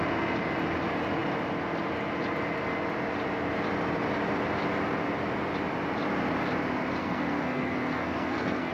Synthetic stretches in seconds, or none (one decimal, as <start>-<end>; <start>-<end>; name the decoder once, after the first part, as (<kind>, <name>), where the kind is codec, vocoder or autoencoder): 7.0-8.7 (codec, SNAC)